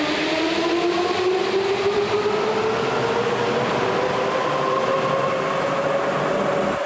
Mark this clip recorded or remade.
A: recorded